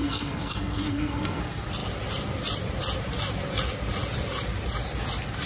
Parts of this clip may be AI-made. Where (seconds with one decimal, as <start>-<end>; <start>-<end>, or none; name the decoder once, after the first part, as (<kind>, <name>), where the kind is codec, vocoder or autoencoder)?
0.0-1.4 (codec, SNAC)